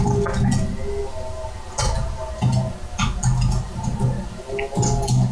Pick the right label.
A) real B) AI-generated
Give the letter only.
A